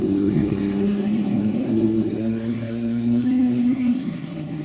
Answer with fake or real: fake